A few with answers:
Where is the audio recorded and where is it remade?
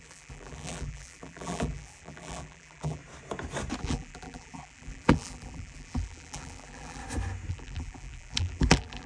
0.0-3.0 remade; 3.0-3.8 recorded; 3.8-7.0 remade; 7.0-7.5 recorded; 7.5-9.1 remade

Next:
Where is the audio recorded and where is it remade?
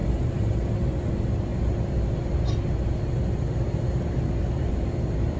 0.0-0.7 remade; 0.7-5.4 recorded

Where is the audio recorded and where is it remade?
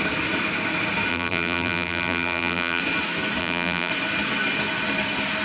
0.0-1.1 recorded; 1.1-2.8 remade; 2.8-3.4 recorded; 3.4-3.9 remade; 3.9-5.4 recorded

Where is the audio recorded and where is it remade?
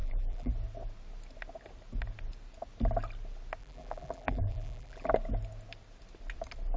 0.0-0.5 remade; 0.5-3.6 recorded; 3.6-5.1 remade; 5.1-6.8 recorded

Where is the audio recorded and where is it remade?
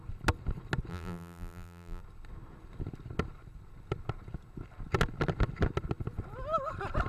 0.0-0.9 recorded; 0.9-2.0 remade; 2.0-7.1 recorded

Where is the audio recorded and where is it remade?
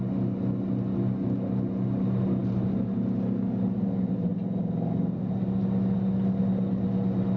0.0-7.4 recorded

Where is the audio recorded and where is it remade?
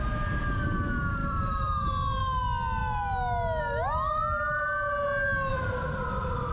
0.0-1.2 recorded; 1.2-1.9 remade; 1.9-5.5 recorded; 5.5-6.5 remade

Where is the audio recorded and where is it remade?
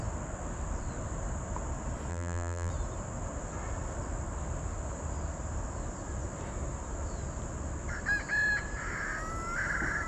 0.0-2.1 recorded; 2.1-2.7 remade; 2.7-10.1 recorded